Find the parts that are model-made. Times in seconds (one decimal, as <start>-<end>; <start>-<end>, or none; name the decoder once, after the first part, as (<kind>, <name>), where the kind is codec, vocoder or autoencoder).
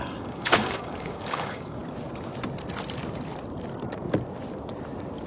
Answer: 0.0-1.8 (codec, DAC)